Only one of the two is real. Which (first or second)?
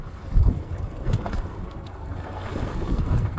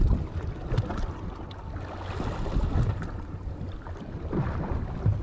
second